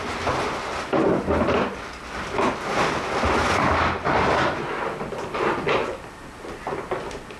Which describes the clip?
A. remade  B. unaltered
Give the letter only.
B